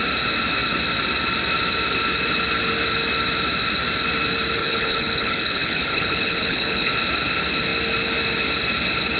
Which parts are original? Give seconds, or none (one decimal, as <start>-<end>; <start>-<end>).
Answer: 0.0-4.6; 6.9-9.2